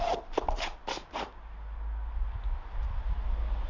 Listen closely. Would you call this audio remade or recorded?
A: recorded